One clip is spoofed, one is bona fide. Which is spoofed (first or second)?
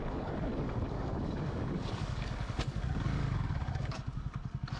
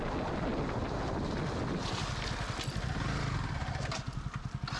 first